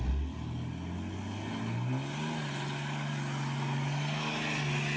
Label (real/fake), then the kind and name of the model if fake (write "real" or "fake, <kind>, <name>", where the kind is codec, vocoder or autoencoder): real